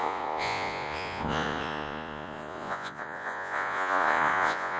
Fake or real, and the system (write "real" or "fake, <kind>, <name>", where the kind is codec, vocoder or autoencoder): fake, vocoder, Vocos